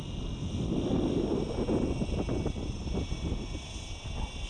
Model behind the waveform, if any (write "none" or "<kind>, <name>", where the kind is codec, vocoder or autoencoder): none